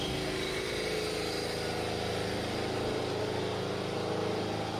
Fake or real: real